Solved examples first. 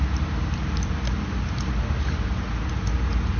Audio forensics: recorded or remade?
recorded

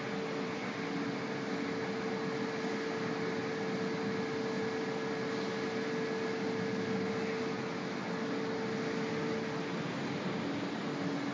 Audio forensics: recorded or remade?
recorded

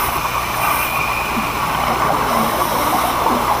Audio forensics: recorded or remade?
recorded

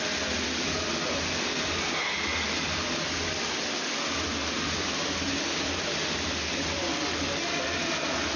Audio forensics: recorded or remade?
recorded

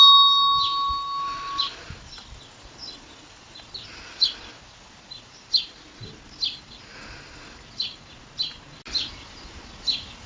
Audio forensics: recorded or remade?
recorded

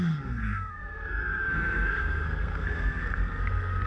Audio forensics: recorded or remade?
remade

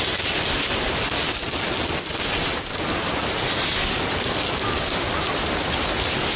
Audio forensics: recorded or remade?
recorded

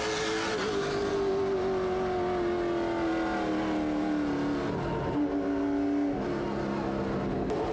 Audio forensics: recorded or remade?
recorded